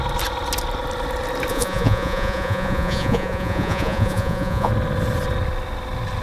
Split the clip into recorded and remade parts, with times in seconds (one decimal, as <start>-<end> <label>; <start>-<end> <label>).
0.0-1.5 recorded; 1.5-4.7 remade; 4.7-6.2 recorded